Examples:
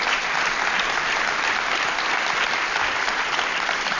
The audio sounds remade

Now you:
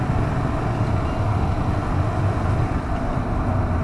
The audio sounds recorded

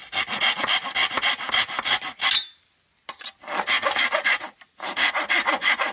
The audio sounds recorded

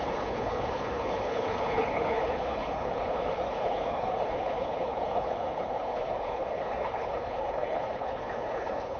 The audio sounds remade